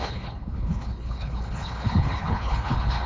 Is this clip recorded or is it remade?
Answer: remade